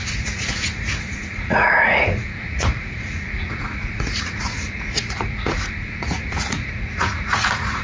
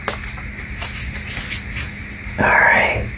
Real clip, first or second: second